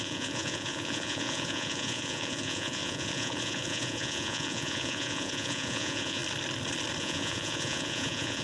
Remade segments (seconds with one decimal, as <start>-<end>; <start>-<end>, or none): 0.0-6.2; 7.0-8.4